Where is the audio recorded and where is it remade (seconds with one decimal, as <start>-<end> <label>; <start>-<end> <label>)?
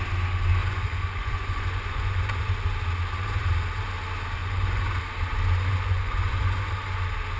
0.0-0.6 recorded; 0.6-2.4 remade; 2.4-4.4 recorded; 4.4-5.0 remade; 5.0-5.7 recorded; 5.7-6.7 remade; 6.7-7.4 recorded